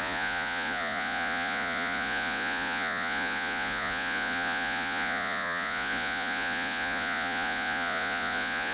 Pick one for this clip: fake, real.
fake